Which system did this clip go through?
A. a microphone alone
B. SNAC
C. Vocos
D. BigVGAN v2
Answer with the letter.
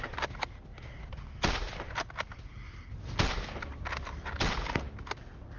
A